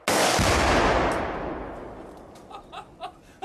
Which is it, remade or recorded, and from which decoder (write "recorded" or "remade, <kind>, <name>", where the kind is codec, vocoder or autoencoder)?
recorded